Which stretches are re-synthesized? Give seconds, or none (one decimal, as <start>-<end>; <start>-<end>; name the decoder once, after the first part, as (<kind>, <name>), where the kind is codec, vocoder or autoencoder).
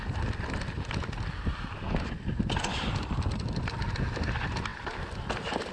none